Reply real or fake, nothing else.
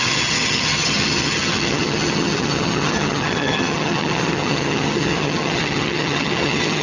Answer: fake